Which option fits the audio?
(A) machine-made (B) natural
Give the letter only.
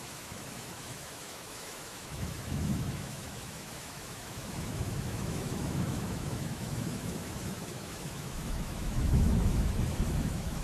A